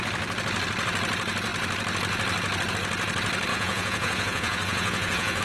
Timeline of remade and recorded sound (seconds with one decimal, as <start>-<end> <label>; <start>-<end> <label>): 0.0-3.5 recorded; 3.5-5.4 remade